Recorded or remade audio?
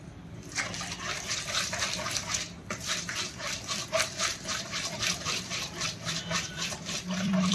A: remade